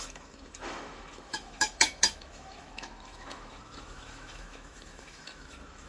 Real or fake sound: fake